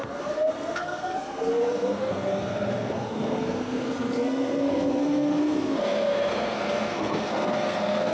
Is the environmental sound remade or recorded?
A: remade